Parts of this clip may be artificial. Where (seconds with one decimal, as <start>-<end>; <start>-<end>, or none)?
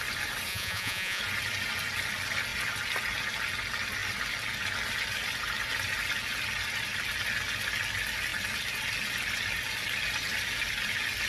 0.5-1.2